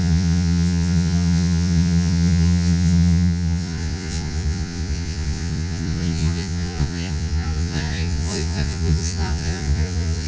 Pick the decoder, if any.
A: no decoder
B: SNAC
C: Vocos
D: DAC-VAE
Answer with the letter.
C